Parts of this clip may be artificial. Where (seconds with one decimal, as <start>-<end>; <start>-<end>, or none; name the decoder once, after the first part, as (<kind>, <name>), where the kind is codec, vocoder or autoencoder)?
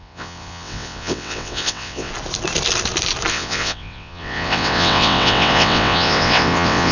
0.0-2.1 (vocoder, WaveNeXt); 3.3-6.9